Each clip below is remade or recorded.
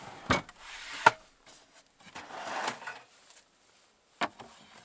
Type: recorded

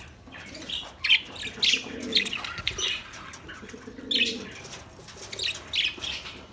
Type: recorded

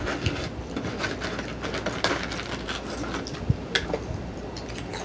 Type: recorded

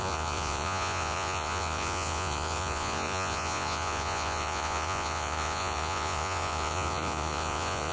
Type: remade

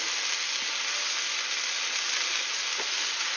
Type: recorded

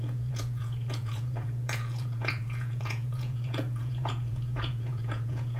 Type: remade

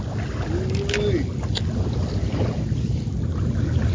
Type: recorded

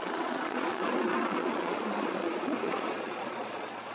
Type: remade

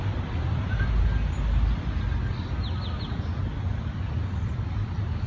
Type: recorded